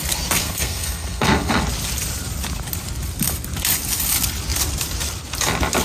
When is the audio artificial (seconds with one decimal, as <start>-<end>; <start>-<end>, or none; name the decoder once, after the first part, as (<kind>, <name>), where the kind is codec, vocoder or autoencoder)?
0.4-1.6 (codec, SNAC)